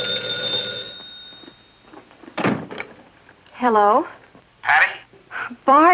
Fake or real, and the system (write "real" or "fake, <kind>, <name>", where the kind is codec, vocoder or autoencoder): fake, vocoder, BigVGAN v2